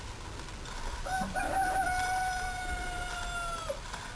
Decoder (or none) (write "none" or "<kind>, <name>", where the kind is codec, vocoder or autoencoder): none